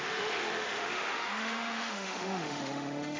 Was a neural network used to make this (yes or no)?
yes